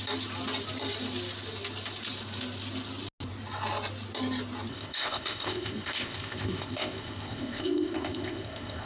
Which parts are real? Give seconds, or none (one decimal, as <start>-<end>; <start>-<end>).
0.0-4.7